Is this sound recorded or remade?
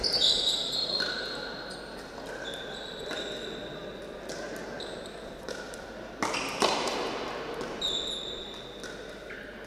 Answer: recorded